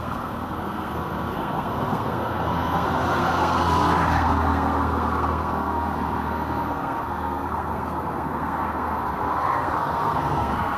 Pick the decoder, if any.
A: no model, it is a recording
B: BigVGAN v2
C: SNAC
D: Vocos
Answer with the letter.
C